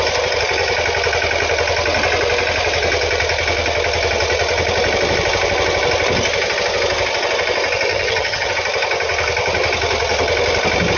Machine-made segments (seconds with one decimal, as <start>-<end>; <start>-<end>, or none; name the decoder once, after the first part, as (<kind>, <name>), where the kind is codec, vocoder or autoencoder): 7.9-8.5 (vocoder, HiFi-GAN)